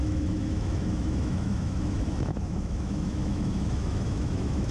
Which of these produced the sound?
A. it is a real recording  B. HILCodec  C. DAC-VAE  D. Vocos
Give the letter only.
C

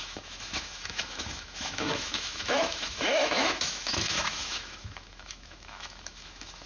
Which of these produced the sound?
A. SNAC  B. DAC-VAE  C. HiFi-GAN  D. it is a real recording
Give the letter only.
B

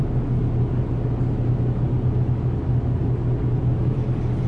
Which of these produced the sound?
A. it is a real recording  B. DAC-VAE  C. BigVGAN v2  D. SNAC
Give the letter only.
A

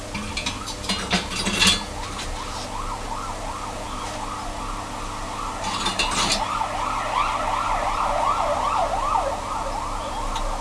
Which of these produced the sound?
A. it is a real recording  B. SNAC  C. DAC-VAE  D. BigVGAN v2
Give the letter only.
A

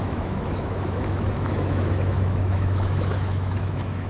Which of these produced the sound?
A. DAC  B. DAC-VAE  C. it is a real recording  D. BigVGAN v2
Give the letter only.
B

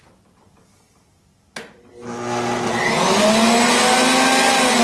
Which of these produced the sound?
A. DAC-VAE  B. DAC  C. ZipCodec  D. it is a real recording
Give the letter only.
D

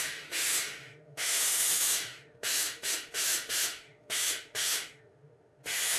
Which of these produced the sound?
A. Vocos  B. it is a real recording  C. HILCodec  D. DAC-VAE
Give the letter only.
D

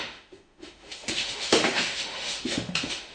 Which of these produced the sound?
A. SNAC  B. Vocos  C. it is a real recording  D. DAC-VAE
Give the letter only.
D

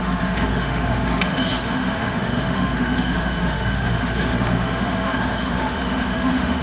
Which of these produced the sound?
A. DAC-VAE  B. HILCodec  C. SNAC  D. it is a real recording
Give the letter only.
A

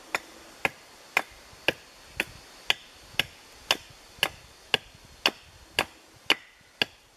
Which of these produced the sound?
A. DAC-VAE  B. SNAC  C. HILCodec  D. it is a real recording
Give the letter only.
D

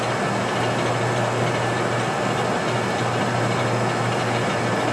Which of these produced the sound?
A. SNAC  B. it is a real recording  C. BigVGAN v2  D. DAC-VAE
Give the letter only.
B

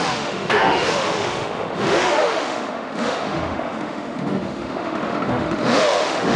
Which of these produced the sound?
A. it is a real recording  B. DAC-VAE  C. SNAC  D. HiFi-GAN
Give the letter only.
B